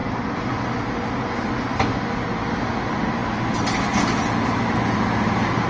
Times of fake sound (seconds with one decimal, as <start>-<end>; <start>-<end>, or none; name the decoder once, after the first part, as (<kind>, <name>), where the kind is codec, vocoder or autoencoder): none